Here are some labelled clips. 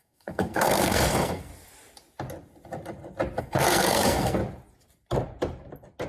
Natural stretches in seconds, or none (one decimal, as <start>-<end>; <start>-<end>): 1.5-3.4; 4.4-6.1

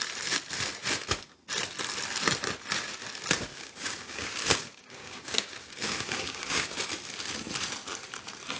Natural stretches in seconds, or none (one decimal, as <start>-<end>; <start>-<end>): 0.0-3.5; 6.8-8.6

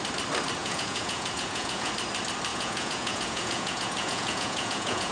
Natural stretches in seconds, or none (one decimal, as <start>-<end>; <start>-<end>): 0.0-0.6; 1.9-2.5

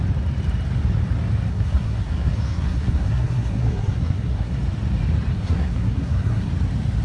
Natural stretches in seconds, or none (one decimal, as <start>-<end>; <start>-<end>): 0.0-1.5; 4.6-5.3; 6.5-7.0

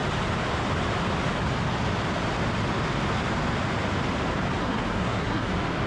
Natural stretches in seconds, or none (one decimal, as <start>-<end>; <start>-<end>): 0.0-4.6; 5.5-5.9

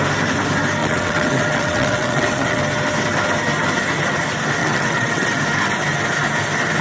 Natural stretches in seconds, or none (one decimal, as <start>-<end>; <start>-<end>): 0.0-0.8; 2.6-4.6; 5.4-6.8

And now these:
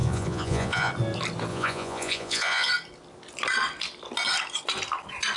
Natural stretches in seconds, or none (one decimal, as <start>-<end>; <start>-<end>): 0.9-1.5; 2.7-5.4